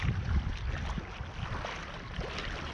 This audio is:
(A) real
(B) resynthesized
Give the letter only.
A